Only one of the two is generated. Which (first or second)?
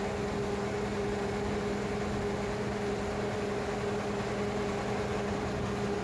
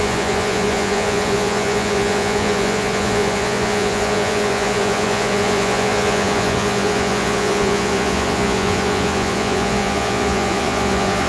second